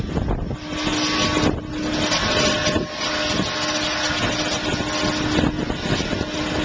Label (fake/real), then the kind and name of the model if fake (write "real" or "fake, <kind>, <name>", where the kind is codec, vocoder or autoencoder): real